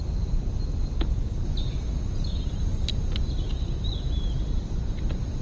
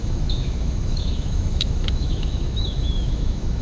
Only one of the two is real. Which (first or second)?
first